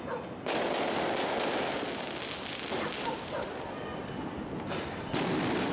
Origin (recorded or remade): recorded